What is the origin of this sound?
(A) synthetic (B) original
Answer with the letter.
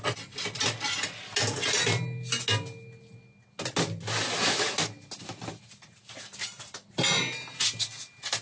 B